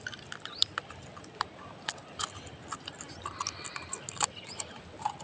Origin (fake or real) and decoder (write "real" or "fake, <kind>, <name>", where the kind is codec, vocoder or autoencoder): real